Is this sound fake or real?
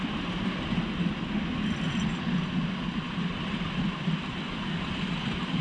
real